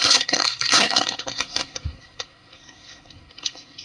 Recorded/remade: remade